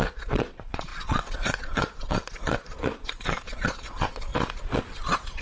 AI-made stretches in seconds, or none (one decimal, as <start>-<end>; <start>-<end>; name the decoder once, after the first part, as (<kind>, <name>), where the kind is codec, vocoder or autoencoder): 0.0-4.3 (vocoder, Vocos); 4.9-5.4